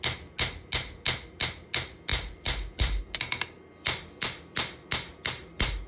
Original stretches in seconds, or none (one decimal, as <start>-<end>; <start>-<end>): 0.0-2.1; 3.0-5.9